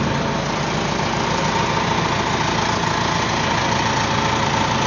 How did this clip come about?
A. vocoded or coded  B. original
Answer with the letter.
B